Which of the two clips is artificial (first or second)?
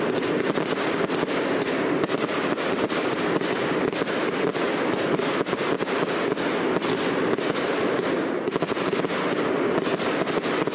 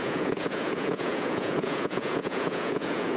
second